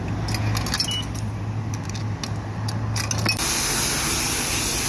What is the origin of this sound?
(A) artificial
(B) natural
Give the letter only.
B